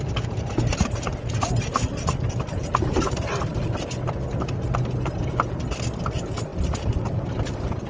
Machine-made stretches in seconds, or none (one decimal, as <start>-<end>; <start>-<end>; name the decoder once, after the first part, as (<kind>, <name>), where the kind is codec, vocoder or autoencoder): none